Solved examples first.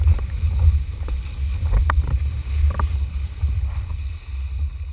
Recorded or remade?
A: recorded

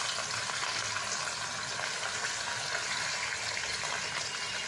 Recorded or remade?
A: recorded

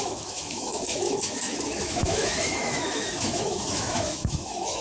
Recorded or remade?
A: remade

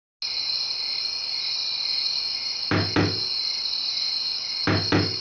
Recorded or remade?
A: recorded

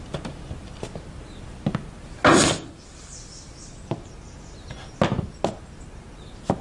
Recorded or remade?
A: recorded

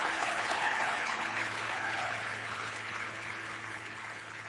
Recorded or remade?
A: remade